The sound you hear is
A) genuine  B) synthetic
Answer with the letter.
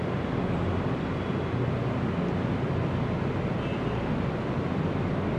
A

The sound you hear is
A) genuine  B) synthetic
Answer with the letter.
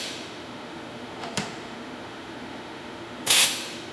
B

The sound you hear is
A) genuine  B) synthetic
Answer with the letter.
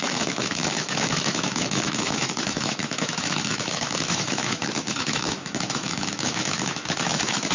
B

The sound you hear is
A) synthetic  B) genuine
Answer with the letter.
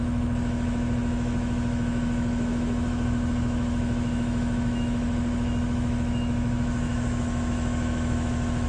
A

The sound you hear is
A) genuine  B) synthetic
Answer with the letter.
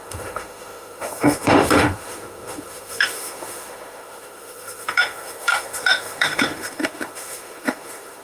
B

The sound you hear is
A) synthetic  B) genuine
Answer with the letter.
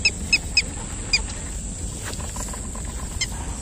B